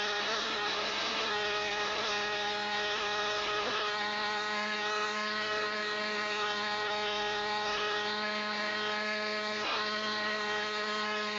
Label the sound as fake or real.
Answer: fake